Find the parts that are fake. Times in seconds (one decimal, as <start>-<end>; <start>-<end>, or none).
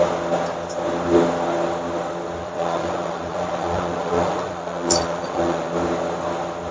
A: 2.4-5.7